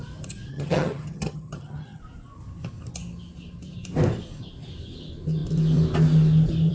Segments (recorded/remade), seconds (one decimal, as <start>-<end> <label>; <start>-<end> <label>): 0.0-0.5 recorded; 0.5-2.0 remade; 2.0-6.7 recorded